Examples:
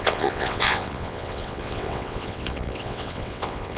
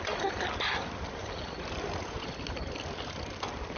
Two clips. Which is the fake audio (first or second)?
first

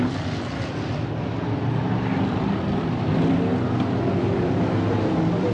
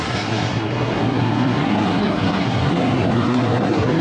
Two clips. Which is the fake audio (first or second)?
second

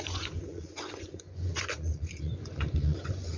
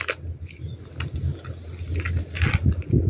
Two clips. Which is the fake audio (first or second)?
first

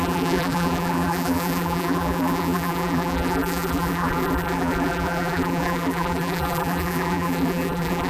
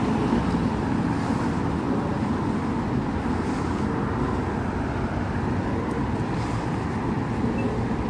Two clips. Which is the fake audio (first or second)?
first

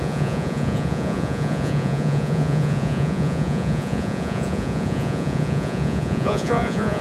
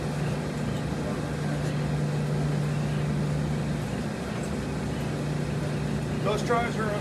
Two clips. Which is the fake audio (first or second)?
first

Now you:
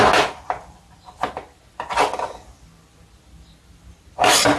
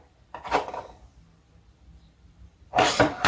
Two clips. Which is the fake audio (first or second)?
second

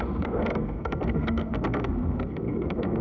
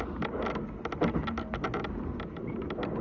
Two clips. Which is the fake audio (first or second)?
first